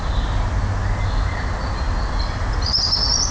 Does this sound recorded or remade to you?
recorded